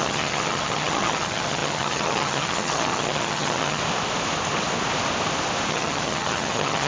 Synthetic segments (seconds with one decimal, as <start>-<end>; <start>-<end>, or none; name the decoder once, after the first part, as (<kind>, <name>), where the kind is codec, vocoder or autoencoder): 0.0-3.8 (vocoder, HiFi-GAN); 5.7-6.9